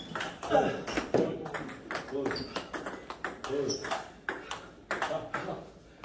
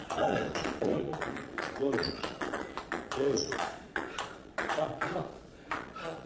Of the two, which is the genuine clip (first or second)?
first